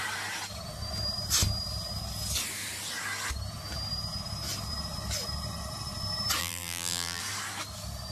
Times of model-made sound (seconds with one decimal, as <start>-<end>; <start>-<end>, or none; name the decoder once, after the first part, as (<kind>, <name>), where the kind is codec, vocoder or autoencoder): 6.4-7.2 (vocoder, BigVGAN v2)